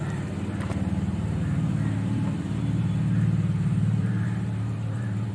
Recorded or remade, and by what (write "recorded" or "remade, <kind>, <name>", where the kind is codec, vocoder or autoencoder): remade, vocoder, BigVGAN v2